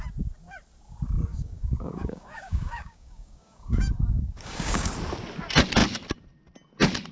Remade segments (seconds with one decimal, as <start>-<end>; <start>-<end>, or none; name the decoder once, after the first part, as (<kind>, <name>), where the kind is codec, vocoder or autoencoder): 1.3-4.9 (codec, DAC)